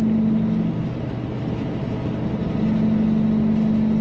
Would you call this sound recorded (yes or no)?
yes